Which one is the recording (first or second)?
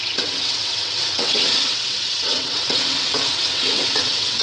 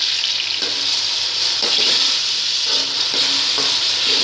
second